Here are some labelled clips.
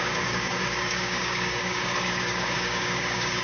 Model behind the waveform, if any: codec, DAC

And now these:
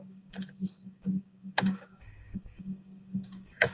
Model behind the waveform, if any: codec, DAC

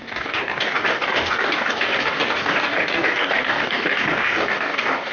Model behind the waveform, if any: codec, DAC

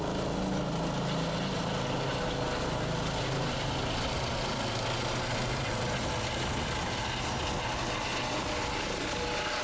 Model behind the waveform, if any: none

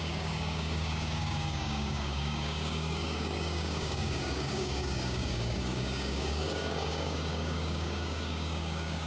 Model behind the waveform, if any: codec, DAC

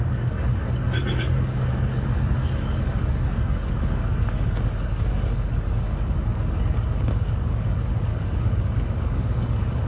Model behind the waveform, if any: codec, DAC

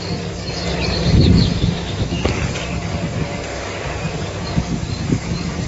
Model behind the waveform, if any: codec, DAC